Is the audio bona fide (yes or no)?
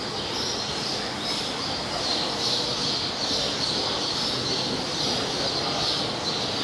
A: yes